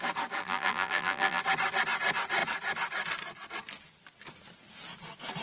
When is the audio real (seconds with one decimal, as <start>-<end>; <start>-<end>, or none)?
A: 0.0-0.4; 1.4-5.4